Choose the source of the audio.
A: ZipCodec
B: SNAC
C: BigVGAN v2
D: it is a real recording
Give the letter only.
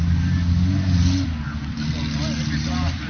D